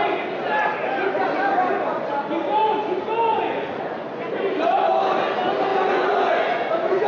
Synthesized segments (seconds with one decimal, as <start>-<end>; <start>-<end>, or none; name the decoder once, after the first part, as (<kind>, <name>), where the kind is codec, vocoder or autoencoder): 3.3-4.3 (vocoder, Vocos); 5.7-7.1